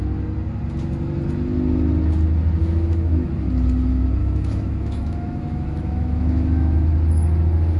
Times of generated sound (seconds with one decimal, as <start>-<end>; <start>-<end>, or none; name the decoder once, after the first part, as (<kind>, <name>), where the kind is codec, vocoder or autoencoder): 2.6-3.3 (autoencoder, DAC-VAE); 4.2-6.9